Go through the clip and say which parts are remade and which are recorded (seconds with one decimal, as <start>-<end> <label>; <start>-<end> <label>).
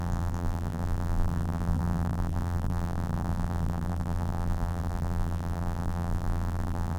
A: 0.0-7.0 remade